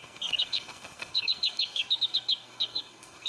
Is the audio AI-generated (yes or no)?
yes